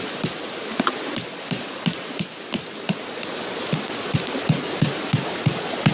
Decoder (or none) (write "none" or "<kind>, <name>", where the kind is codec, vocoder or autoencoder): none